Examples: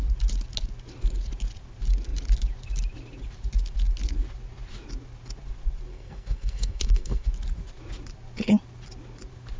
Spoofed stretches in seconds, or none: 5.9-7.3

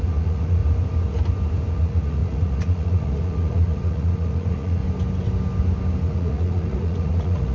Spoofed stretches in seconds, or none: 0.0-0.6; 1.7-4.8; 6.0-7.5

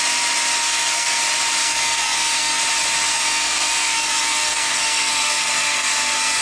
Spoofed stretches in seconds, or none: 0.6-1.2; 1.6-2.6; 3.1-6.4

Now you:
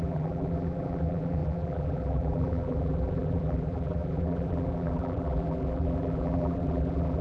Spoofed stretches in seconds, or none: 0.0-7.2

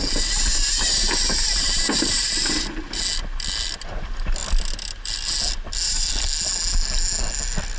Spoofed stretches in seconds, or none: 0.7-3.0